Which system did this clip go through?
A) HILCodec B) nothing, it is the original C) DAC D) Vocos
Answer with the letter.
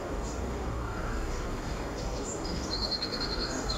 C